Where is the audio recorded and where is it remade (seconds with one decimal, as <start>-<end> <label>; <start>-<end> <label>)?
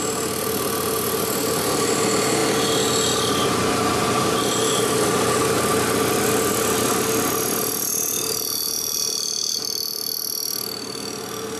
0.0-11.6 recorded